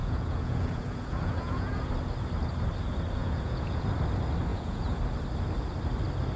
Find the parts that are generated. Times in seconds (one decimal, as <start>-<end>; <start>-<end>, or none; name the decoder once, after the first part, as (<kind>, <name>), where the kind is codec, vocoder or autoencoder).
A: 0.0-1.9 (vocoder, Vocos); 3.2-3.8; 4.5-5.0